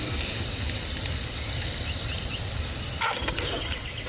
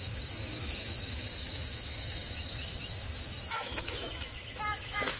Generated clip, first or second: second